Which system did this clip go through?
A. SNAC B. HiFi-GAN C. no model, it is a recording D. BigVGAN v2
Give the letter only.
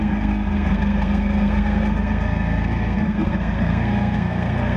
A